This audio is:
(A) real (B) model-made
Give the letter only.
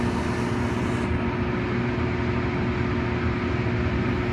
A